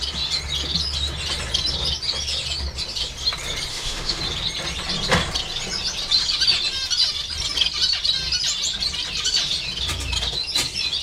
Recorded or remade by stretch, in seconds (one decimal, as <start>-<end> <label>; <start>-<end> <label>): 0.0-3.7 recorded; 3.7-4.2 remade; 4.2-11.0 recorded